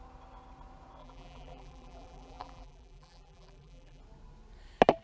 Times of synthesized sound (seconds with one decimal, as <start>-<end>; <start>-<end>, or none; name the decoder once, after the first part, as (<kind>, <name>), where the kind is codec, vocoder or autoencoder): 1.0-4.0 (vocoder, BigVGAN v2)